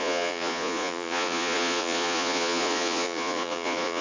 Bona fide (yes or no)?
no